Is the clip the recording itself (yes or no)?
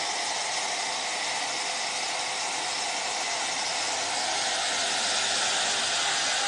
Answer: yes